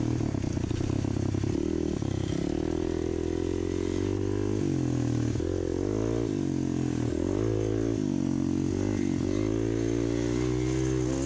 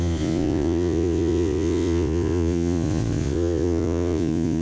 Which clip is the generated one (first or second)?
second